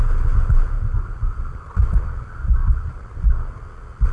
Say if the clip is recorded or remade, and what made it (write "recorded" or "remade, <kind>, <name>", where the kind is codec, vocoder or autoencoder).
recorded